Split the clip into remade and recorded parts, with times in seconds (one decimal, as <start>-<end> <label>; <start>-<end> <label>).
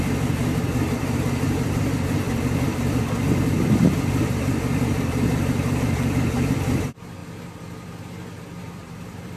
0.0-7.2 remade; 7.2-8.4 recorded; 8.4-9.4 remade